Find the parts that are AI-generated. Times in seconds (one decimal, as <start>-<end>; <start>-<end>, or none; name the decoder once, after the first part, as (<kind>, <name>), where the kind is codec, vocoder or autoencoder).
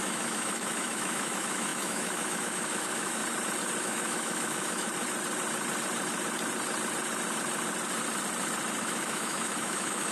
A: 0.0-3.2 (autoencoder, DAC-VAE); 3.8-4.9; 8.8-10.1